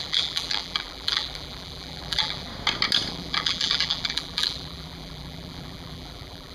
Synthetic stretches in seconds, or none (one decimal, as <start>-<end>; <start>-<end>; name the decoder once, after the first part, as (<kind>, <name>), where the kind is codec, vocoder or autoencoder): 0.0-2.5 (vocoder, BigVGAN v2); 3.1-6.5